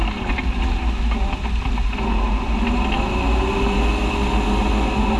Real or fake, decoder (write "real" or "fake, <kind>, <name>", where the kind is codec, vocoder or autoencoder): real